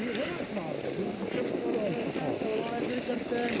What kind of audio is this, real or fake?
real